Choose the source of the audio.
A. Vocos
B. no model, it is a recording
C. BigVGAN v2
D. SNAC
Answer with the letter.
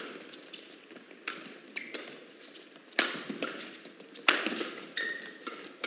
B